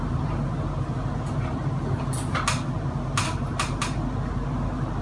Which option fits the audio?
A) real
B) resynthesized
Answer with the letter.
A